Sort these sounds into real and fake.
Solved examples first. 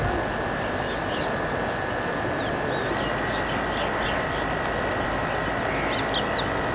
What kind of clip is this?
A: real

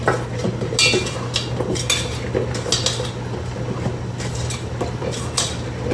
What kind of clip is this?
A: real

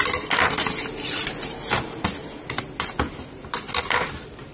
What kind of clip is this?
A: real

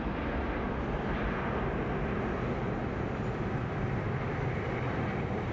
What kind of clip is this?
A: real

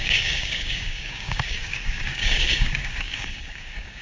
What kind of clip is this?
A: fake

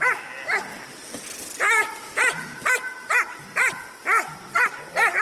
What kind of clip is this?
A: real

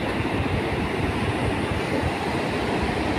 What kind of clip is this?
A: real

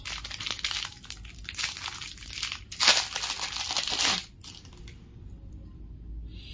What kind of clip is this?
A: real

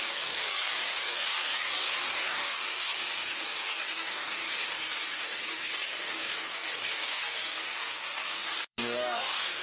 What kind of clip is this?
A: fake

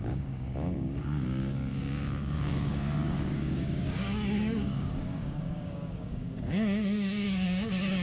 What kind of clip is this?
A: fake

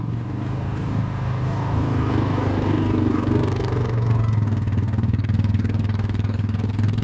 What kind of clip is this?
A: fake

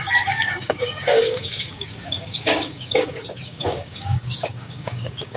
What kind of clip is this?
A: fake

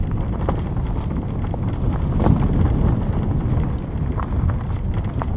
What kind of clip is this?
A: real